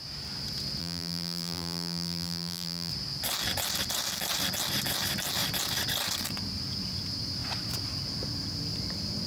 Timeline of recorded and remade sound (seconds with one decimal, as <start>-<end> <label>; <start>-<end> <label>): 0.0-0.8 recorded; 0.8-2.9 remade; 2.9-9.3 recorded